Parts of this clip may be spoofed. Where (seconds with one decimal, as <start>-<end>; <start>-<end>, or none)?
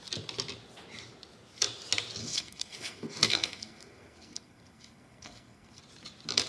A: 2.2-5.8